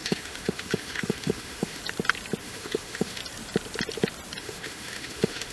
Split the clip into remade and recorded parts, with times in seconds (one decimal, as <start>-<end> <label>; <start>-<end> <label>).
0.0-1.8 remade; 1.8-2.4 recorded; 2.4-3.2 remade; 3.2-4.4 recorded; 4.4-5.5 remade